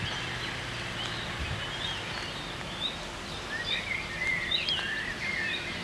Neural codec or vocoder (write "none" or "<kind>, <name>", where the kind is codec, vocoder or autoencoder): none